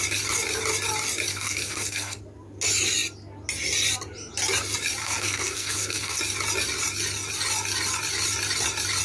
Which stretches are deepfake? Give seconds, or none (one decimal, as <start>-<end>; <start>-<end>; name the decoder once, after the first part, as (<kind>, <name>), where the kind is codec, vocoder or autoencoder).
1.3-2.2 (codec, SNAC); 5.0-6.2